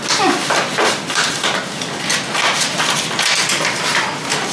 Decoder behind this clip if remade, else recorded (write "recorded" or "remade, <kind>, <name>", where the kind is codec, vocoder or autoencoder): recorded